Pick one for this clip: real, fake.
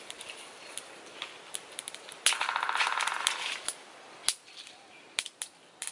real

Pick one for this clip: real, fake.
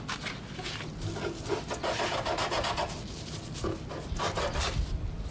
real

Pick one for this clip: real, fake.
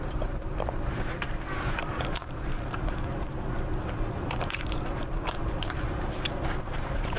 fake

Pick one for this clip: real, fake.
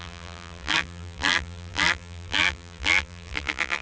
fake